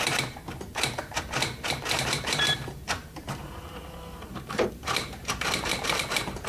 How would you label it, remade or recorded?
remade